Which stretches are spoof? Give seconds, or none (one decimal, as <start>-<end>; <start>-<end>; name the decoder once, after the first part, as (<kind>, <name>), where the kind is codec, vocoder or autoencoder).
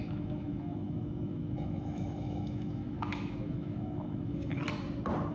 0.0-4.6 (autoencoder, DAC-VAE)